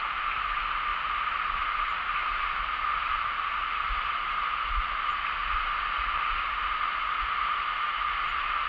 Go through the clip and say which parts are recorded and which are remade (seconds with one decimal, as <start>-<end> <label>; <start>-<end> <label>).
0.0-8.7 recorded